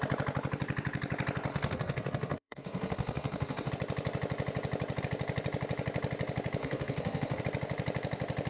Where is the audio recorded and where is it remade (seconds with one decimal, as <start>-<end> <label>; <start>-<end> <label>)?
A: 0.0-1.5 recorded; 1.5-3.7 remade; 3.7-6.6 recorded; 6.6-7.4 remade; 7.4-8.5 recorded